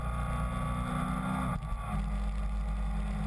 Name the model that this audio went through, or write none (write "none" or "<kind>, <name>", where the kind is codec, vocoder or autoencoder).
none